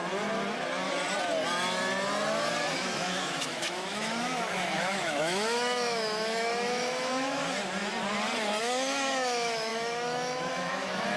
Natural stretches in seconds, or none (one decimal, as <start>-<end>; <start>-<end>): 0.0-2.7; 7.4-8.6